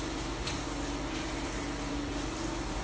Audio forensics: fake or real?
fake